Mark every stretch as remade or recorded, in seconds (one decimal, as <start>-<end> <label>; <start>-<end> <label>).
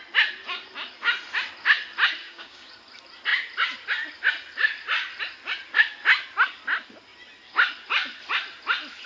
0.0-2.2 recorded; 2.2-2.7 remade; 2.7-9.1 recorded